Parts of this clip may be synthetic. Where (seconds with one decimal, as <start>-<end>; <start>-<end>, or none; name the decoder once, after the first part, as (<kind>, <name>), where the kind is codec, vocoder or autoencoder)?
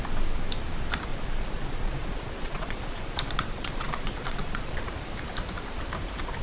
1.1-4.9 (vocoder, Vocos)